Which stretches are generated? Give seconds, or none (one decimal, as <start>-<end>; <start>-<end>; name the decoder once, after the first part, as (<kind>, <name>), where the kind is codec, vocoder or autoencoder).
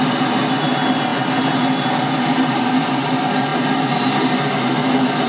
none